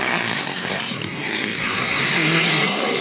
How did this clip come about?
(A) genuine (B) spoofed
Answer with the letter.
B